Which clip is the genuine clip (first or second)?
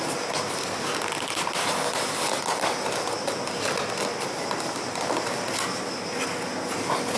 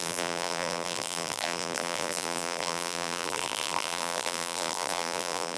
first